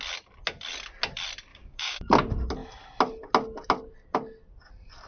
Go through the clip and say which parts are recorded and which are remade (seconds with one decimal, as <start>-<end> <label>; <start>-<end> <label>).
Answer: 0.0-1.5 recorded; 1.5-2.1 remade; 2.1-5.1 recorded